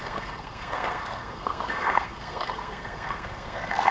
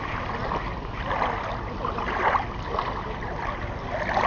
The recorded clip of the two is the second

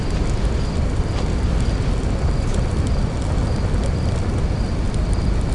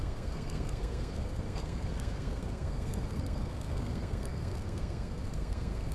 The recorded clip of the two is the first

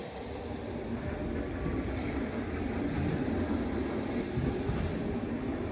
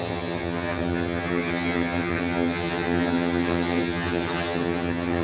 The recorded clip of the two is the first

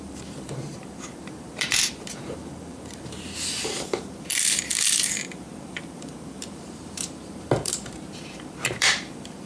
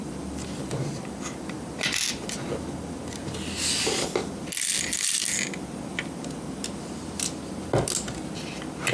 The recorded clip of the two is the second